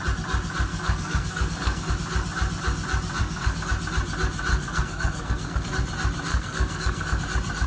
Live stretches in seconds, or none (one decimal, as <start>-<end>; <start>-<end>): 0.0-0.7; 1.9-3.2; 3.7-4.5; 5.7-6.3; 7.2-7.7